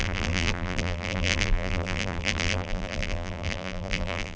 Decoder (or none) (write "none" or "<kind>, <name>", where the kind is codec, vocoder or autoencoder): vocoder, BigVGAN v2